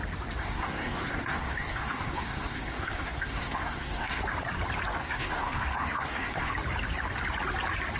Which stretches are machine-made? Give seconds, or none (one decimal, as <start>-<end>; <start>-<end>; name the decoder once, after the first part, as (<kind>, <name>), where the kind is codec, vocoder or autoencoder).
0.4-4.2 (codec, SNAC); 5.0-6.5